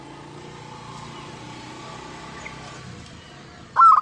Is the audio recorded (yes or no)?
yes